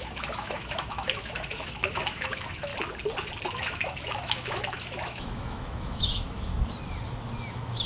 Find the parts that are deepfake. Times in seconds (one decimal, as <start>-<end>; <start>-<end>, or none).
0.0-2.7; 3.5-6.5; 7.5-7.9